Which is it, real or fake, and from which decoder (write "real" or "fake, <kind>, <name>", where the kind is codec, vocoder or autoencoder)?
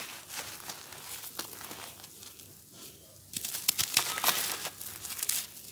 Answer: real